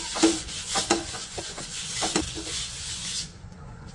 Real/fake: fake